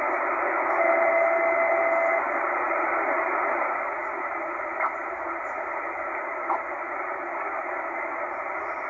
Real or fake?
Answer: real